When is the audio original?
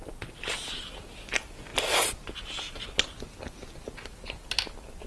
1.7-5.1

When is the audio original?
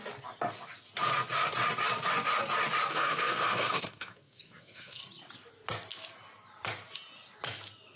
0.0-2.9; 5.0-8.0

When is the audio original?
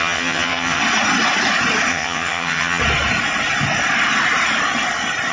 0.8-1.9; 2.8-5.3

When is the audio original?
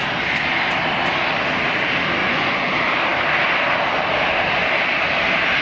0.0-2.2; 2.7-5.6